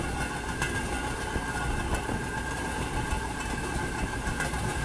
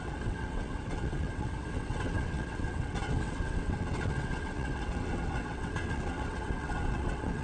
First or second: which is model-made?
second